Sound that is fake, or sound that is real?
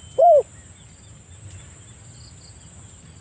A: real